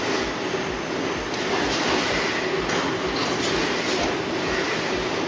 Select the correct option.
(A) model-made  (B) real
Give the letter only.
B